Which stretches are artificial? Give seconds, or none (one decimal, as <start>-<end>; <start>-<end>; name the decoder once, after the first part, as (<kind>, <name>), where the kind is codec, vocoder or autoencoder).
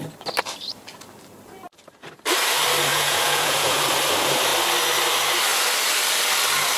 2.9-3.8 (vocoder, Vocos)